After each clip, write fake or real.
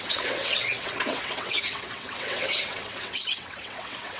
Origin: fake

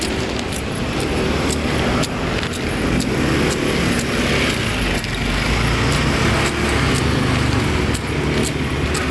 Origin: real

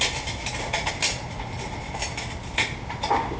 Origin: real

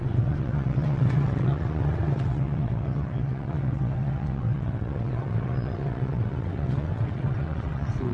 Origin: fake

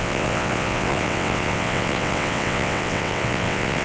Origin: fake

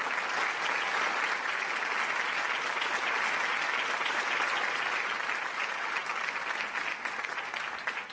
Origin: real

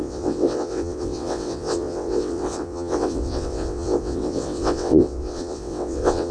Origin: fake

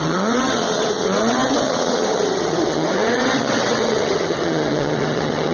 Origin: fake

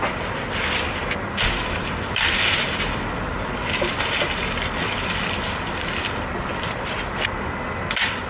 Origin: real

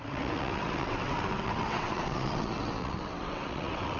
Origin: fake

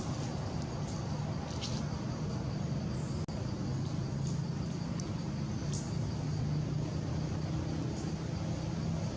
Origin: real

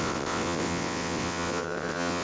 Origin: fake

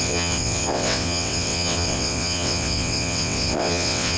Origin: fake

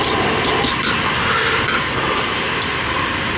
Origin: real